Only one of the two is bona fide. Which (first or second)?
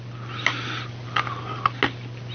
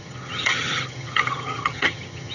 first